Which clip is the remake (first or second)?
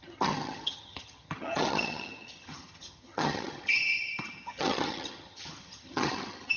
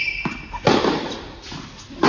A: first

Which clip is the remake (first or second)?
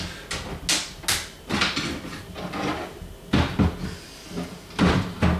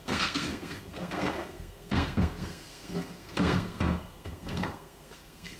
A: second